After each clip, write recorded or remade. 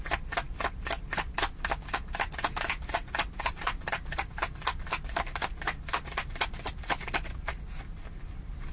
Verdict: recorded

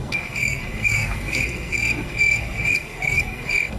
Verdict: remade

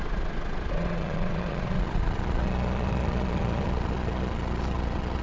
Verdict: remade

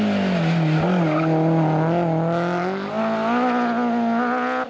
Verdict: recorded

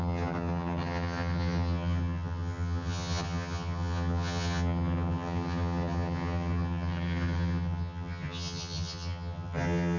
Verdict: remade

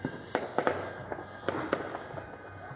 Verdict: recorded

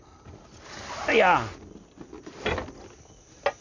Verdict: recorded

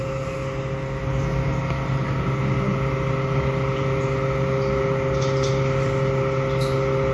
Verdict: recorded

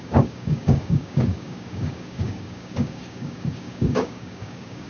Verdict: remade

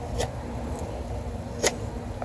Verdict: recorded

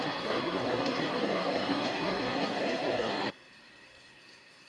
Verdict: remade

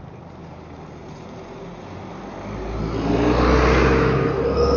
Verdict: recorded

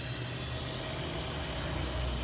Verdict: recorded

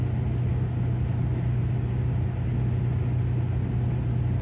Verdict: recorded